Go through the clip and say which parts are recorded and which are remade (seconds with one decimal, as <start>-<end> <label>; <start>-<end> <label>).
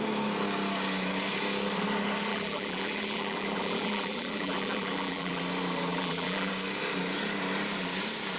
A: 0.0-2.3 recorded; 2.3-5.4 remade; 5.4-5.9 recorded; 5.9-6.5 remade; 6.5-8.4 recorded